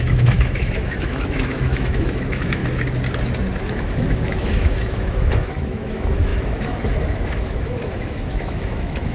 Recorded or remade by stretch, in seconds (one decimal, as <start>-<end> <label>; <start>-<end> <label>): 0.0-2.6 remade; 2.6-3.6 recorded; 3.6-9.1 remade